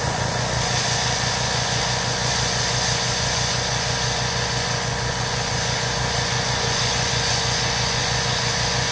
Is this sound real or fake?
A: fake